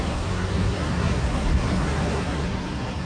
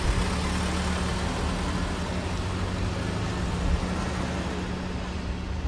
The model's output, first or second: first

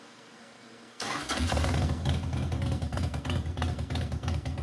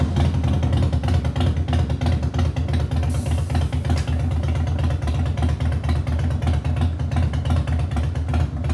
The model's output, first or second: first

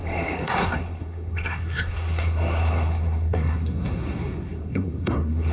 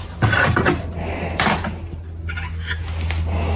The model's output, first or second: first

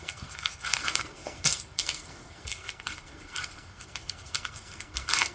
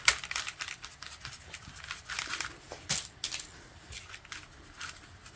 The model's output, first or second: first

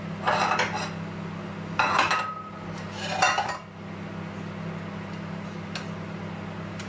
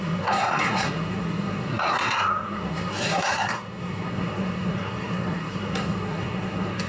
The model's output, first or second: second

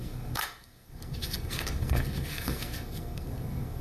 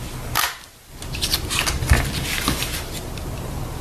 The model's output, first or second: first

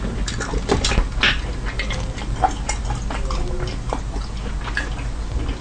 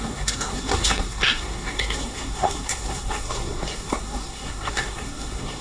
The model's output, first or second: second